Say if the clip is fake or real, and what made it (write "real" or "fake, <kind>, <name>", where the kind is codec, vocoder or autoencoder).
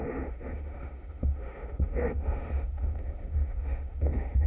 fake, autoencoder, DAC-VAE